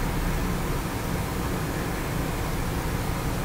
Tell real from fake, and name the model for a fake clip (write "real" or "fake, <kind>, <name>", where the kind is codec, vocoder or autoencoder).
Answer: real